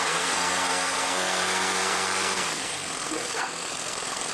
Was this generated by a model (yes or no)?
yes